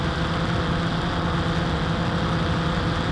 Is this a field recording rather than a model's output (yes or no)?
yes